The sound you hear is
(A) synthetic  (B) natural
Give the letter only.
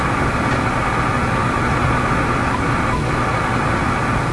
B